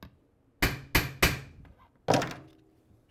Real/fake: real